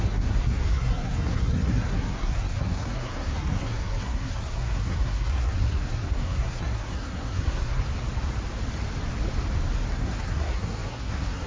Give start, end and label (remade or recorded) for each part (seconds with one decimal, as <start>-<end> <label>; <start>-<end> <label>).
0.0-7.8 remade; 7.8-9.9 recorded; 9.9-11.5 remade